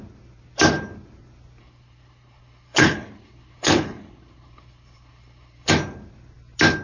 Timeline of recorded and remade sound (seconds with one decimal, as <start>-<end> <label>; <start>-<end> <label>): 0.0-1.6 recorded; 1.6-5.7 remade; 5.7-6.8 recorded